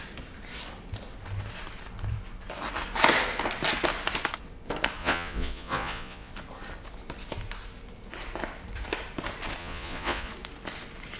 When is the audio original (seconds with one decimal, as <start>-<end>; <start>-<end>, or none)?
0.0-5.0; 6.3-9.6; 10.3-11.2